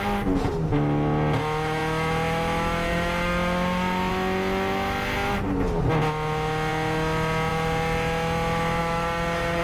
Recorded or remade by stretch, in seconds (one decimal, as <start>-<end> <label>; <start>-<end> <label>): 0.0-8.8 recorded; 8.8-9.6 remade